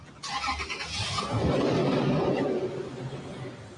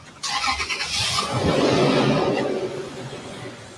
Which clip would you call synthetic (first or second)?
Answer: second